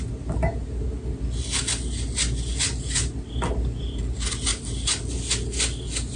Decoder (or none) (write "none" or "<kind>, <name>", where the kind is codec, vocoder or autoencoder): none